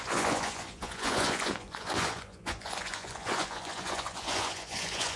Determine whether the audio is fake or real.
fake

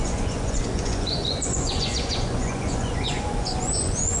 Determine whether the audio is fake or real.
fake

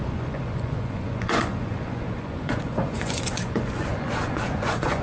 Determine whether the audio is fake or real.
fake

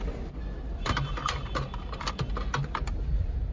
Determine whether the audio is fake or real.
real